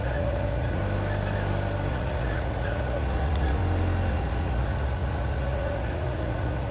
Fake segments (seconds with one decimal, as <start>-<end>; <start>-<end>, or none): 0.0-0.8; 1.9-3.6; 4.1-6.7

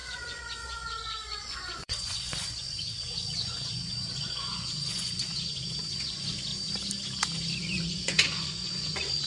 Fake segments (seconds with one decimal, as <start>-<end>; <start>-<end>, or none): 0.0-6.5; 7.6-9.3

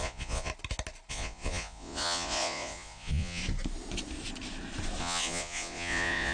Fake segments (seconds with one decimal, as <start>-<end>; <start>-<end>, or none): 0.0-0.5; 1.1-3.4; 5.0-6.3